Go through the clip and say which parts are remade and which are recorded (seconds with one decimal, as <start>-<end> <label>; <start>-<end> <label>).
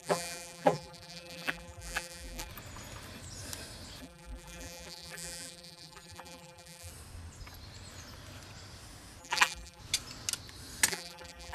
0.0-2.5 remade; 2.5-4.0 recorded; 4.0-6.9 remade; 6.9-9.2 recorded; 9.2-9.8 remade; 9.8-10.9 recorded; 10.9-11.5 remade